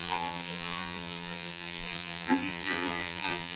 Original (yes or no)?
no